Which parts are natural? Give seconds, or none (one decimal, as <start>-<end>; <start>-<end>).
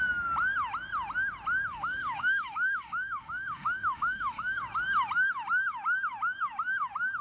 0.0-1.7; 4.6-7.2